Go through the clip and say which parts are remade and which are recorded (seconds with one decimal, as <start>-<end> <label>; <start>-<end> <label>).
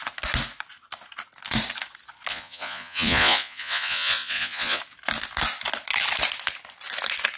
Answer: 0.0-2.3 recorded; 2.3-4.8 remade; 4.8-7.4 recorded